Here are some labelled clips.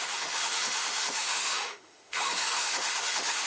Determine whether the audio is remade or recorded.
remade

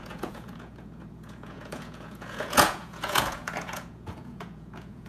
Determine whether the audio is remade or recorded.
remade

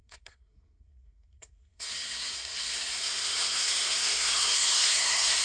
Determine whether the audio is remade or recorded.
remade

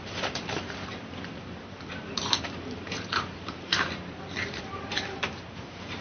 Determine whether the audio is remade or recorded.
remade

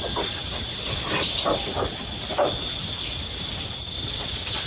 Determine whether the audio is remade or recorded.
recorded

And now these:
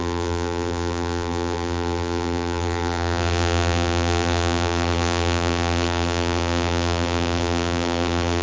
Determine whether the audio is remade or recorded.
remade